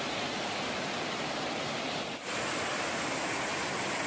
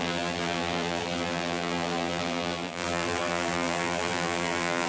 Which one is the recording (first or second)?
first